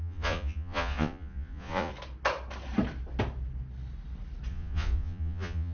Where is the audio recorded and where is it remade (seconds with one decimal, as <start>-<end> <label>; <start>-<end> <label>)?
0.0-1.9 remade; 1.9-4.5 recorded; 4.5-5.7 remade